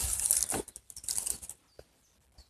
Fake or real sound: real